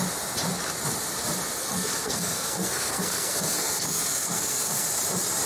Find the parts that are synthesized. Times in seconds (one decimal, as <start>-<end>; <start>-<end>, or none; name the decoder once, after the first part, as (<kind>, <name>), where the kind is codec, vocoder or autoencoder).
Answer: 1.6-4.9 (codec, SNAC)